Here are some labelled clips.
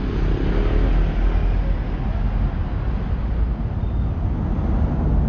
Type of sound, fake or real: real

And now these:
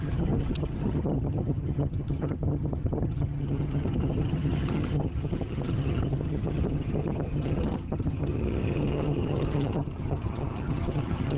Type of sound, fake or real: fake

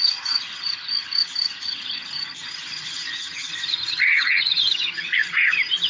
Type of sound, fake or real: fake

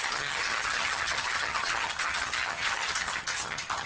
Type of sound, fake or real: fake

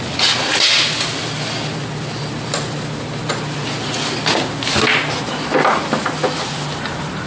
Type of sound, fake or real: real